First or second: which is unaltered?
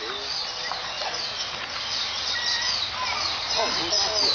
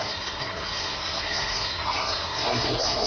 first